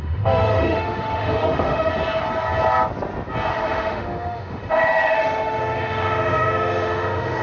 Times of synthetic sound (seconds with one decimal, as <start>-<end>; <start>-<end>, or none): 0.0-1.9; 3.5-7.4

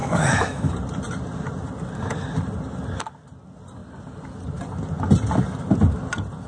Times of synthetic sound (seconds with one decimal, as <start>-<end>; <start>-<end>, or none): 0.0-0.7

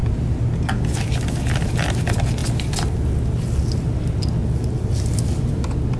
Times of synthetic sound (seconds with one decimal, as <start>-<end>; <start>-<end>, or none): none

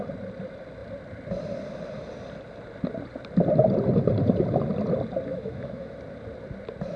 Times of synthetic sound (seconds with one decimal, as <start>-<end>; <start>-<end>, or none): 5.3-6.0

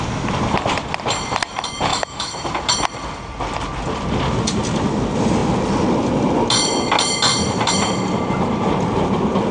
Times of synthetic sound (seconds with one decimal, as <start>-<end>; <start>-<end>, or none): 1.9-2.5